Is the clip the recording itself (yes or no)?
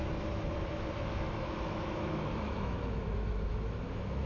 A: no